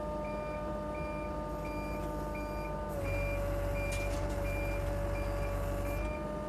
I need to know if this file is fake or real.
real